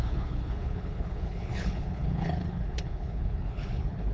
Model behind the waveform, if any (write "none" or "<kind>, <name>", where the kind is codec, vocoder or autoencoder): codec, HILCodec